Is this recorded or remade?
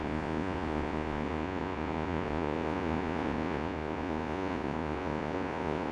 remade